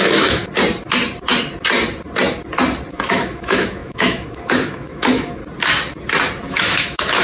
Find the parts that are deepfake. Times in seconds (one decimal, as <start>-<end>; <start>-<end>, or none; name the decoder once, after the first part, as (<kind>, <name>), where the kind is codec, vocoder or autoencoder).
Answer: 0.0-0.4 (autoencoder, DAC-VAE); 2.9-5.4; 6.5-7.2